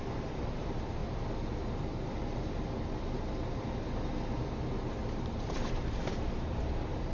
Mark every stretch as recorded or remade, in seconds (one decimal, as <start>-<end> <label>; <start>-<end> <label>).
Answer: 0.0-1.0 remade; 1.0-5.1 recorded; 5.1-7.1 remade

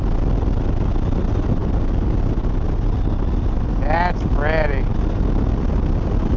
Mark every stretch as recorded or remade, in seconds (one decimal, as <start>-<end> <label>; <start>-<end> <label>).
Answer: 0.0-6.4 recorded

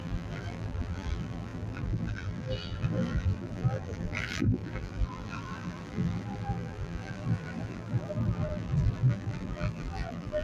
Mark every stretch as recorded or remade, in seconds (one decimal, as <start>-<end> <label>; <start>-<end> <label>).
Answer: 0.0-10.4 remade

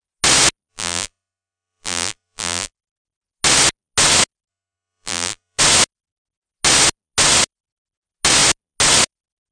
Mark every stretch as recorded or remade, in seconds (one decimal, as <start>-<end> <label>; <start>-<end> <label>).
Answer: 0.0-0.7 recorded; 0.7-2.7 remade; 2.7-4.5 recorded; 4.5-5.6 remade; 5.6-9.5 recorded

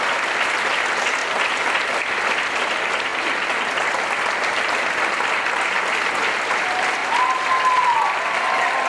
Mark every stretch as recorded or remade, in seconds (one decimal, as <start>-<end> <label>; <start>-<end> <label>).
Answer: 0.0-1.2 recorded; 1.2-1.8 remade; 1.8-3.1 recorded; 3.1-5.1 remade; 5.1-8.9 recorded

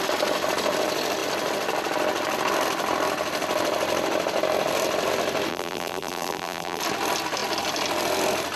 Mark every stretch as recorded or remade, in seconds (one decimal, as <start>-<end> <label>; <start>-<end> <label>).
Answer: 0.0-5.5 recorded; 5.5-6.8 remade; 6.8-8.6 recorded

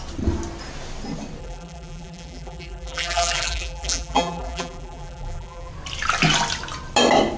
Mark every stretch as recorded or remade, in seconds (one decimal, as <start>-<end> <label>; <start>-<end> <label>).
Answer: 0.0-1.4 recorded; 1.4-5.7 remade; 5.7-7.4 recorded

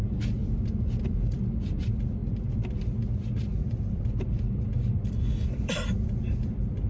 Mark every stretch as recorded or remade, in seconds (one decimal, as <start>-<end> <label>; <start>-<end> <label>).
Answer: 0.0-3.5 recorded; 3.5-6.9 remade